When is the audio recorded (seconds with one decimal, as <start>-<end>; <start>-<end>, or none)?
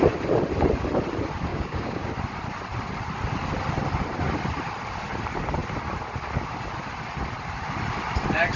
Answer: 0.0-1.5; 2.1-8.6